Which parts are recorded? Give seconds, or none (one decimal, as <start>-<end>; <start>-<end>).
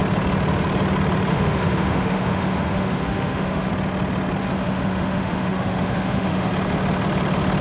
0.0-1.3; 3.7-4.4; 6.5-7.6